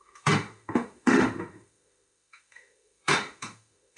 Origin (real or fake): fake